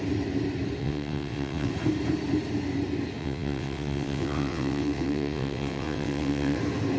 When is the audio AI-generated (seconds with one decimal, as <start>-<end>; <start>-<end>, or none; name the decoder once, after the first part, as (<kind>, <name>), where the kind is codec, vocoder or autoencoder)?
0.8-1.7 (vocoder, WaveNeXt); 3.2-6.6